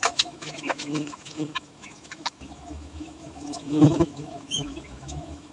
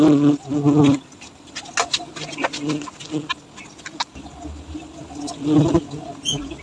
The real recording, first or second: second